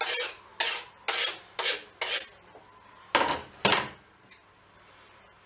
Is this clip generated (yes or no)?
no